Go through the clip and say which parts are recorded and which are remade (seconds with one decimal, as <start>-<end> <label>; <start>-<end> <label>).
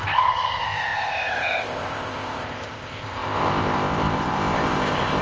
0.0-5.2 remade